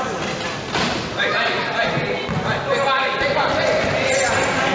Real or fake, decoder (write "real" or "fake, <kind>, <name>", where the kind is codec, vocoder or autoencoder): real